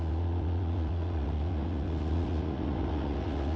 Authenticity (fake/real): fake